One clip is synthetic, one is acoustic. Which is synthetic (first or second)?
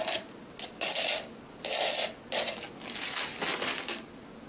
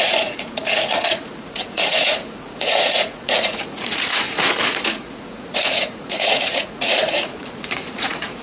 second